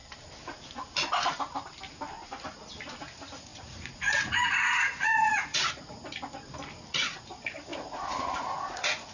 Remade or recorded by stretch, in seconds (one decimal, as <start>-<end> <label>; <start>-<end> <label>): 0.0-3.0 recorded; 3.0-6.0 remade; 6.0-6.9 recorded; 6.9-9.1 remade